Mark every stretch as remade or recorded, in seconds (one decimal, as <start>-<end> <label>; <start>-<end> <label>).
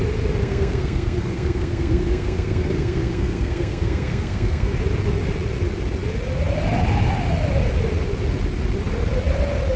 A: 0.0-0.4 recorded; 0.4-4.7 remade; 4.7-9.8 recorded